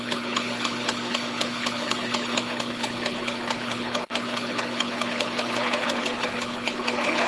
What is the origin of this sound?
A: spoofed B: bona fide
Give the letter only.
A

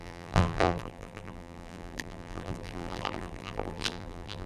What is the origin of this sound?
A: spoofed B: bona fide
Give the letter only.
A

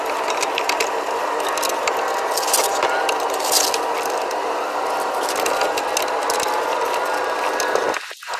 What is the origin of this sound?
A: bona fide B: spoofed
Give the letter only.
A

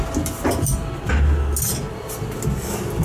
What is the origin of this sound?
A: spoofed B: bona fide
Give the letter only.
B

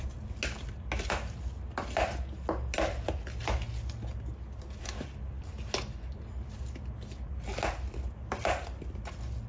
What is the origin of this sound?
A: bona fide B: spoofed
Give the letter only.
A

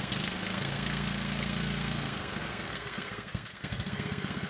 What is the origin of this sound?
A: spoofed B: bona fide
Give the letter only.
A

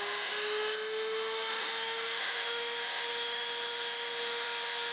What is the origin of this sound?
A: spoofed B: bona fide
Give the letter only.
A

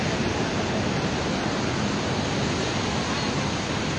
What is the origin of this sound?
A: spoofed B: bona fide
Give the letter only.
B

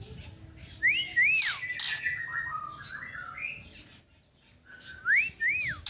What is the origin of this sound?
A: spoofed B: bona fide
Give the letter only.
B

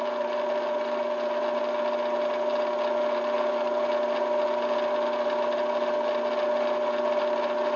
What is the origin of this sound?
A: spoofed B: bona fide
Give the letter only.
B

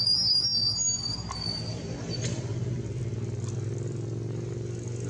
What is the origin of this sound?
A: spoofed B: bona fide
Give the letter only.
B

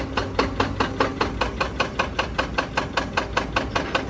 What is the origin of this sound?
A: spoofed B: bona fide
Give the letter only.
B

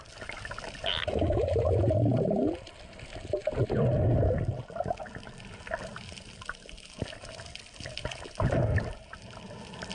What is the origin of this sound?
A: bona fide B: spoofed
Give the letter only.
A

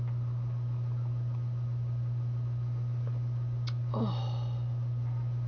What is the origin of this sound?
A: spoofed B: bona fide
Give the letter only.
B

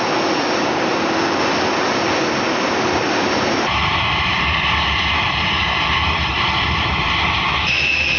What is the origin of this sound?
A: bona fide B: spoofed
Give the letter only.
B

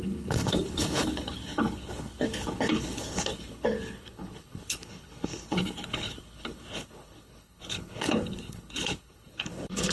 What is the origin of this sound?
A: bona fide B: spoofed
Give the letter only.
B